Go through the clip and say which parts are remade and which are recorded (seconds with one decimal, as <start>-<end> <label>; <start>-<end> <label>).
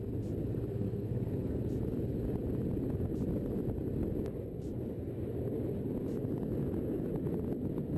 0.0-0.7 recorded; 0.7-1.6 remade; 1.6-8.0 recorded